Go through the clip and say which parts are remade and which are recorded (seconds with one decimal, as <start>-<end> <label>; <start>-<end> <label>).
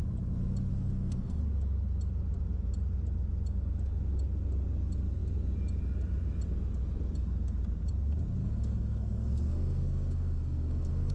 0.0-0.7 recorded; 0.7-1.4 remade; 1.4-8.4 recorded; 8.4-11.1 remade